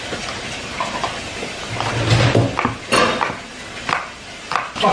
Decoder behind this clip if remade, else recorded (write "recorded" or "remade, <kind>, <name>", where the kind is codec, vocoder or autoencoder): recorded